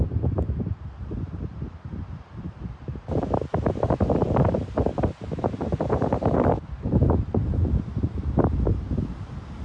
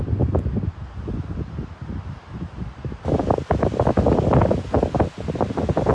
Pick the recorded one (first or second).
second